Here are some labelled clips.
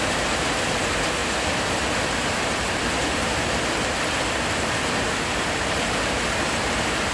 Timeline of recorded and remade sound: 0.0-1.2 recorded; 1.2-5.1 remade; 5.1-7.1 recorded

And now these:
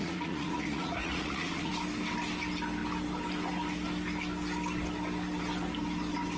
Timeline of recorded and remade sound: 0.0-1.7 remade; 1.7-6.4 recorded

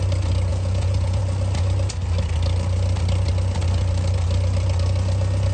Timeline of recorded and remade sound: 0.0-0.5 recorded; 0.5-1.2 remade; 1.2-5.5 recorded

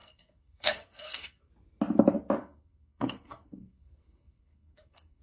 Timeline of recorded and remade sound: 0.0-1.5 remade; 1.5-2.4 recorded; 2.4-5.2 remade